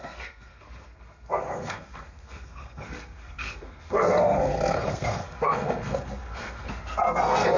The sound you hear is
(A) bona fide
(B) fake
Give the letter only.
B